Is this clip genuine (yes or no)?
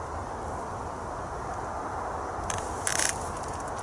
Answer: yes